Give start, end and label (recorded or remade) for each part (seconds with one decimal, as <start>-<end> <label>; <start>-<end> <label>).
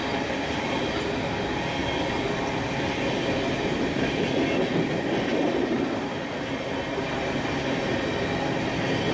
0.0-0.8 remade; 0.8-5.3 recorded; 5.3-6.4 remade; 6.4-9.1 recorded